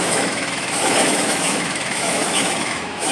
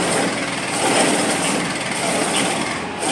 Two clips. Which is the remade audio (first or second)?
first